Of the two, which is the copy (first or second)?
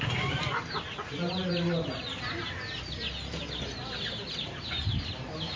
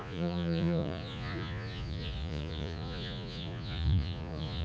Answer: second